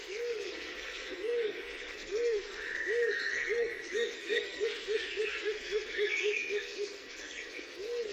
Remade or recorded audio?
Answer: remade